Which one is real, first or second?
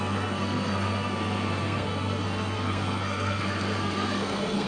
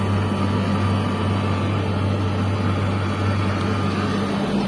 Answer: second